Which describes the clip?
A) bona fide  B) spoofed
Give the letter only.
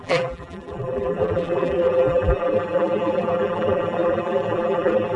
B